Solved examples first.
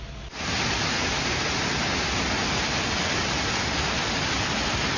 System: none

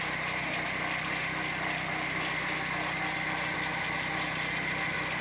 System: none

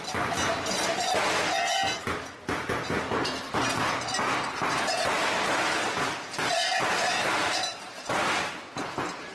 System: none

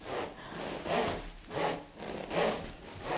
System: none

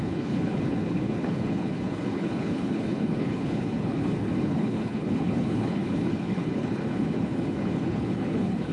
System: codec, HILCodec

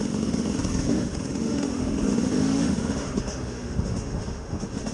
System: autoencoder, DAC-VAE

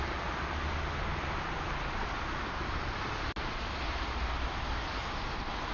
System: none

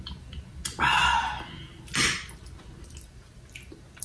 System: none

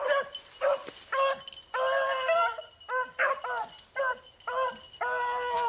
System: none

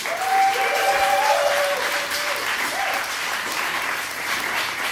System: vocoder, BigVGAN v2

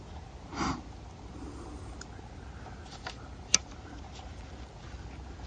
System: none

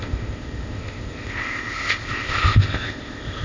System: codec, ZipCodec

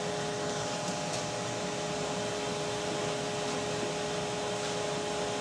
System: none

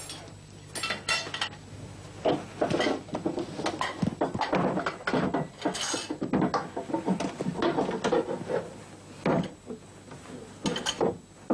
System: none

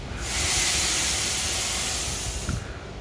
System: none